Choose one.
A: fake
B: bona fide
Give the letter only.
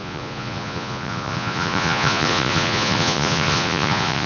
A